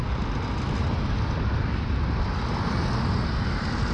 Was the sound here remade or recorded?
recorded